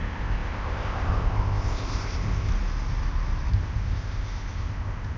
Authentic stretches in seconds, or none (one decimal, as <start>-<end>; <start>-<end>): 2.5-3.5